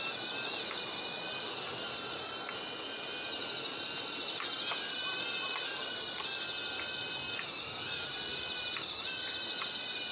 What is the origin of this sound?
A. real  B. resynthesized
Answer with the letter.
A